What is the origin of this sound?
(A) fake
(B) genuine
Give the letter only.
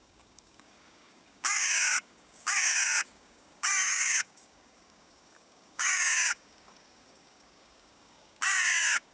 A